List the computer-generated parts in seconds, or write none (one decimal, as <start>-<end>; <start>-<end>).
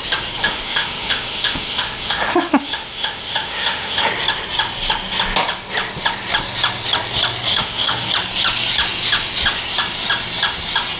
0.4-4.1; 7.5-8.1